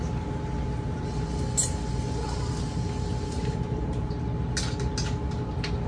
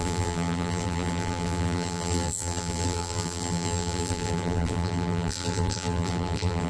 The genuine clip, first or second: first